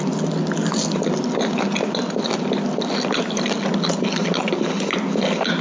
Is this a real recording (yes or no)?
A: yes